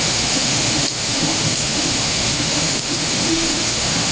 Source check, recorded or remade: remade